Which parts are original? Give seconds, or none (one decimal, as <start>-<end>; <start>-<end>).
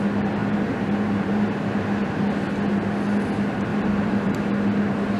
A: 0.0-0.4; 2.2-3.7; 4.5-5.2